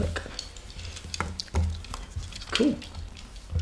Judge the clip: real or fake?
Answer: real